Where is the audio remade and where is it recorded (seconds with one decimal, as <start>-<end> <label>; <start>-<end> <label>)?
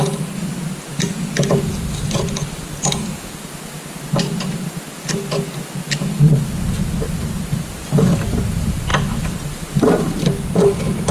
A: 0.0-11.1 recorded